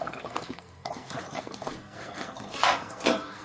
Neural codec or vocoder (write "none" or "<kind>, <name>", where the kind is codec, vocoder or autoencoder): codec, SNAC